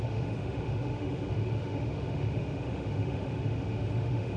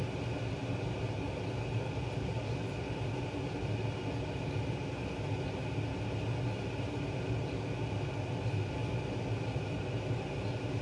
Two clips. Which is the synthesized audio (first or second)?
first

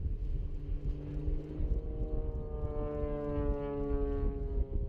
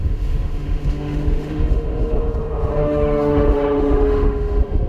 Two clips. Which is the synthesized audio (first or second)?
second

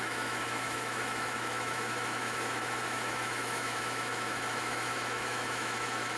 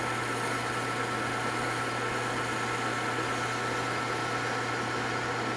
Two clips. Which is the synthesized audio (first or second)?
first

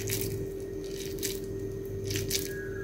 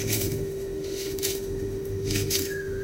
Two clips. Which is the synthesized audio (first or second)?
second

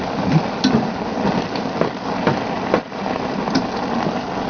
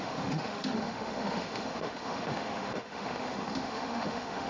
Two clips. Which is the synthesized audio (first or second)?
second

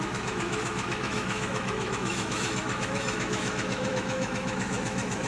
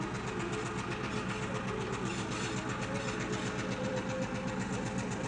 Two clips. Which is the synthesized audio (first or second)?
first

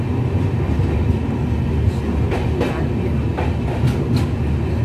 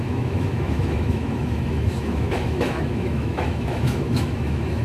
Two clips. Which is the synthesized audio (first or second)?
second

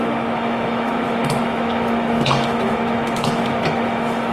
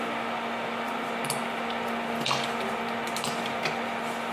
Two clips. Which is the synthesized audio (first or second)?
first